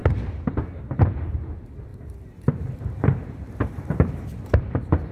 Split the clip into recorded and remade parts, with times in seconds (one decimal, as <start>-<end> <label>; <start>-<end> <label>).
0.0-0.8 recorded; 0.8-5.1 remade